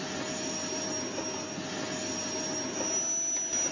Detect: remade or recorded recorded